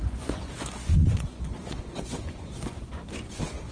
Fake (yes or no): yes